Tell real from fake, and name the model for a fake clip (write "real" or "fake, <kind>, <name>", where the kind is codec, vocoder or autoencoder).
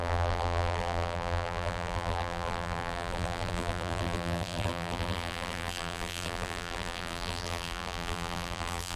fake, vocoder, BigVGAN v2